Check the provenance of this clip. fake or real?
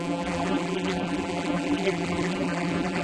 fake